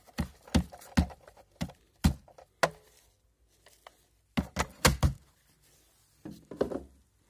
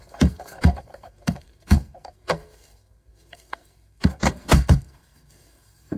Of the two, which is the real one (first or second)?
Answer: first